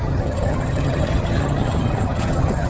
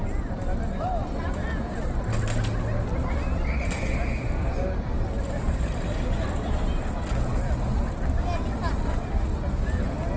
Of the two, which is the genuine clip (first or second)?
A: second